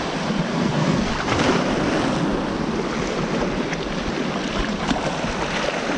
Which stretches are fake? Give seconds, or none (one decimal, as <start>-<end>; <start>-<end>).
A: 0.5-1.1